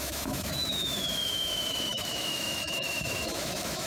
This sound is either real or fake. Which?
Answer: fake